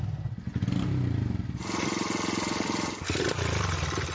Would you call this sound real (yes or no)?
yes